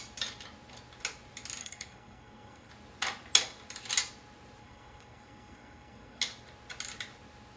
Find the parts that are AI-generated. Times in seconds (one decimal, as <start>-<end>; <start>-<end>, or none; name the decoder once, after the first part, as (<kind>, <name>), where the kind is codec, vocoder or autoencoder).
1.6-2.7 (codec, SNAC); 4.6-6.2